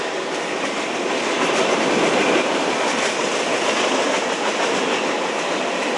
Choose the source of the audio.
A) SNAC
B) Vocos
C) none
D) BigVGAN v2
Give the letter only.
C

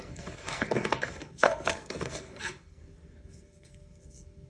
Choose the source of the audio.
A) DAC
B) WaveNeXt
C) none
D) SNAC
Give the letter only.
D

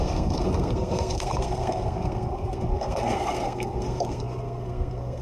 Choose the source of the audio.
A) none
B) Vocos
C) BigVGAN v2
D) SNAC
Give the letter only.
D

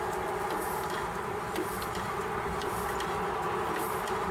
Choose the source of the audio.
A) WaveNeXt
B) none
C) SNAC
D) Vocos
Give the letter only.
B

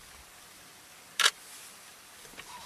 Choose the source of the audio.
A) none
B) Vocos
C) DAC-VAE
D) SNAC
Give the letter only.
A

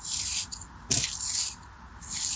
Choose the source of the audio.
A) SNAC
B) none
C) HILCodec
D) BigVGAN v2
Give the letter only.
B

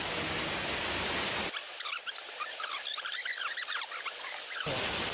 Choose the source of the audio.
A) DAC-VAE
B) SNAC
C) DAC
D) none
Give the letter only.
D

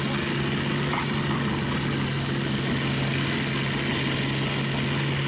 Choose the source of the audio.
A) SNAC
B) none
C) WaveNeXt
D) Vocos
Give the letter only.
B